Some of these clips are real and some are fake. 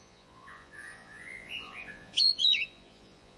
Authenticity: fake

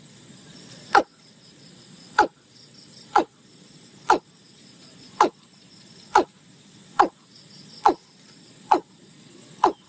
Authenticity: fake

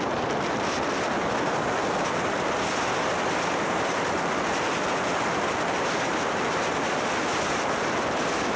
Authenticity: real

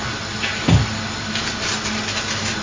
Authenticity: real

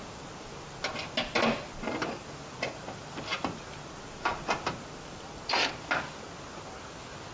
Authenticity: real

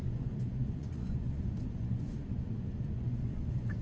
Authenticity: fake